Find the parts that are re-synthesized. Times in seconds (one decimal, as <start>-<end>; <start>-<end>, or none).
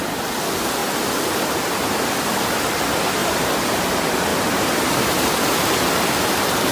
3.2-3.9; 4.3-5.4